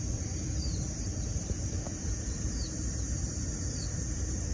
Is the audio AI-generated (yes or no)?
yes